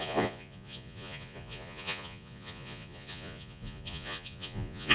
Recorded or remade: remade